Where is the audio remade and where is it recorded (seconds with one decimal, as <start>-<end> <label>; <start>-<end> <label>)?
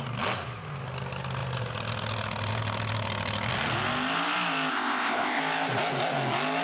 0.0-4.7 recorded; 4.7-5.4 remade; 5.4-6.6 recorded